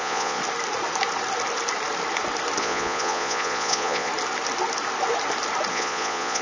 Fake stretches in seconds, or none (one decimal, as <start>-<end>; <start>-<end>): 0.0-0.4; 2.6-4.1; 5.7-6.4